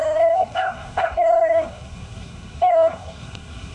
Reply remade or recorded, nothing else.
remade